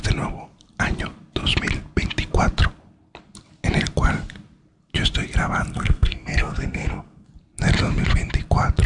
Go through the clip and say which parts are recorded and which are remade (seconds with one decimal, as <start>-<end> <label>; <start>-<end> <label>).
0.0-5.7 recorded; 5.7-7.3 remade; 7.3-8.9 recorded